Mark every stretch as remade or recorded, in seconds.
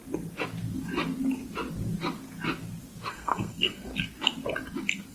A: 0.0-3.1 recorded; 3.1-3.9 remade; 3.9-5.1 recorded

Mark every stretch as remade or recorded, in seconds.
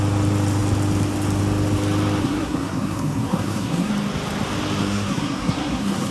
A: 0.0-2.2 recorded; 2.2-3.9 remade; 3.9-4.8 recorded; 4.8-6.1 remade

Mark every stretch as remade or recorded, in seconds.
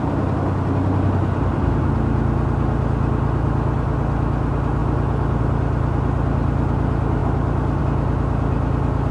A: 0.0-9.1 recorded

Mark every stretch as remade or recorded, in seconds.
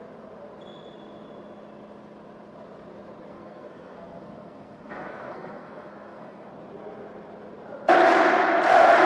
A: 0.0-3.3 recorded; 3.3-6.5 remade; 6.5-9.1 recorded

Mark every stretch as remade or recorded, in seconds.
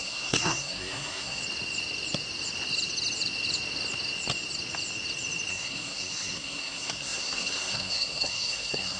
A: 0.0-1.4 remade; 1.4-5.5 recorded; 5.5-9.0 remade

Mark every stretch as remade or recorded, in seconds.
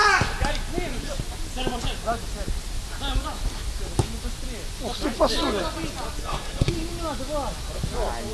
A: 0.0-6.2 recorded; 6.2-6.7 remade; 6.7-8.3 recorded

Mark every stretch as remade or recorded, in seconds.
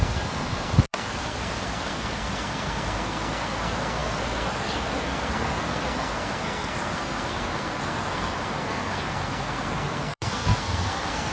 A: 0.0-11.3 remade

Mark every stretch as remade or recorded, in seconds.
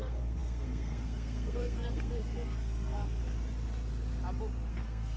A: 0.0-3.2 remade; 3.2-4.7 recorded; 4.7-5.2 remade